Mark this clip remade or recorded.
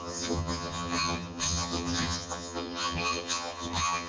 remade